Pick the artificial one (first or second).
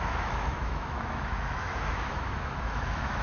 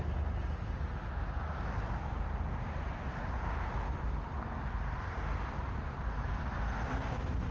first